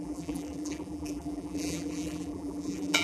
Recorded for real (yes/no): no